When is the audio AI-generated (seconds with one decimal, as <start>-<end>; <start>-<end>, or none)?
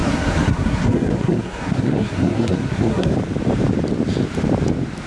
0.0-3.1